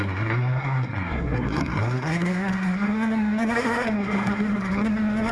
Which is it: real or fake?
fake